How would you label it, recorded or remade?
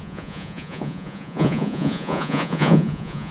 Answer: remade